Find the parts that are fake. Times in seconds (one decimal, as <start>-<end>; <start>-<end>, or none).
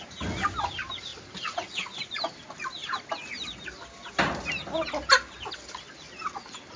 none